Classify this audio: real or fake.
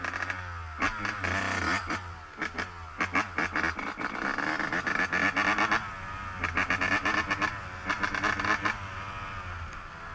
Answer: real